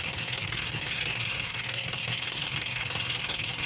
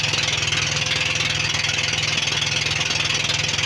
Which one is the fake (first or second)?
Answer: first